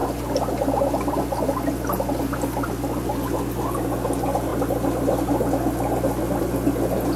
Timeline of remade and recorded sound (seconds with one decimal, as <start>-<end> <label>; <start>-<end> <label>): 0.0-7.2 recorded